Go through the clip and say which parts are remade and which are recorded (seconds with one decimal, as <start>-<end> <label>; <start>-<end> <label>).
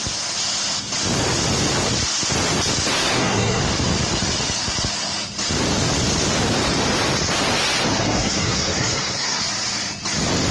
0.0-3.0 recorded; 3.0-3.6 remade; 3.6-7.9 recorded; 7.9-9.4 remade; 9.4-10.5 recorded